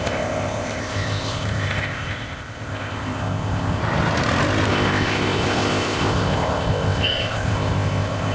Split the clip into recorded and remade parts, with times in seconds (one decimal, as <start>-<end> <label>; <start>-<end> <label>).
0.0-3.8 remade; 3.8-4.7 recorded; 4.7-8.3 remade